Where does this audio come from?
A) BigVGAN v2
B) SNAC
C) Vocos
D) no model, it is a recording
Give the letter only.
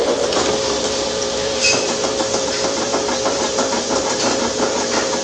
A